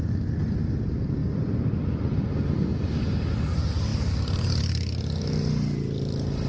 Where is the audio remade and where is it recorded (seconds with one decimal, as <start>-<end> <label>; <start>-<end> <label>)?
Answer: 0.0-6.5 recorded